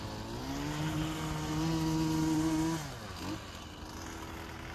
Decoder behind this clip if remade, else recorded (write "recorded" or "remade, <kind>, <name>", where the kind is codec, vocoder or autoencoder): recorded